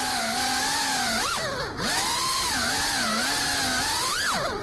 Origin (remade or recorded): recorded